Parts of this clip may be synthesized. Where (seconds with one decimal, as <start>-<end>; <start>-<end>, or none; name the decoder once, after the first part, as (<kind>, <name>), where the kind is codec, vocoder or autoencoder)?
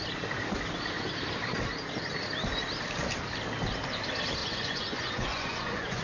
4.4-6.0 (vocoder, Vocos)